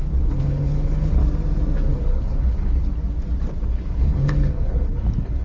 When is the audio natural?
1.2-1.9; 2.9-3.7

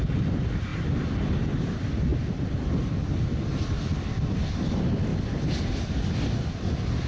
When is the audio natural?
0.0-2.1; 2.7-7.1